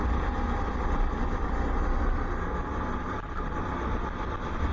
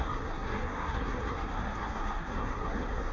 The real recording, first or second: first